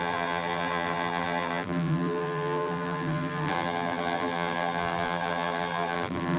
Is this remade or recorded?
remade